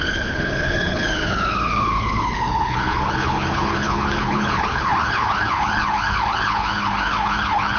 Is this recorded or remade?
remade